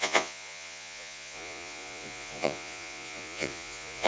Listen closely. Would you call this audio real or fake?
fake